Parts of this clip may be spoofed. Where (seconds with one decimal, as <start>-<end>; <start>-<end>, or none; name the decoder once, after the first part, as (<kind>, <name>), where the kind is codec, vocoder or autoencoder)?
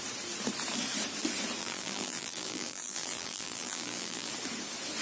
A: 1.6-4.3 (vocoder, BigVGAN v2)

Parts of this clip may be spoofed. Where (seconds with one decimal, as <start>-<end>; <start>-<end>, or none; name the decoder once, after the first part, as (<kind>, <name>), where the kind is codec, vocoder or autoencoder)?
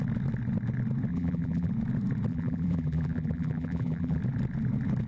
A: 1.1-1.7 (vocoder, BigVGAN v2); 2.3-4.2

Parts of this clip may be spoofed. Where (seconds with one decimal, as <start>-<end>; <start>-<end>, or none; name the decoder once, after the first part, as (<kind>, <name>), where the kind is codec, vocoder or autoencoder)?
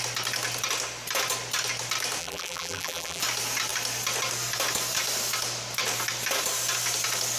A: 2.2-3.2 (vocoder, BigVGAN v2)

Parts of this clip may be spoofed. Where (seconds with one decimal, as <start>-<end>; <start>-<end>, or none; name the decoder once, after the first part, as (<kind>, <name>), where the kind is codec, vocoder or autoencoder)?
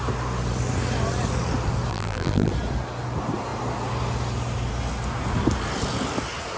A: 1.9-2.5 (vocoder, BigVGAN v2)